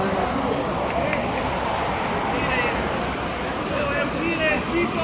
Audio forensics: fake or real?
real